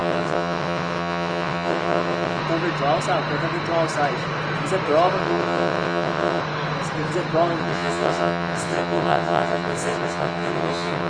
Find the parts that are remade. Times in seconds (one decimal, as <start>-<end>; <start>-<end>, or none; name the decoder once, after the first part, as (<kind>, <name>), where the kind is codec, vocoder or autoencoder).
0.0-2.4 (vocoder, WaveNeXt); 5.2-6.4; 7.6-11.1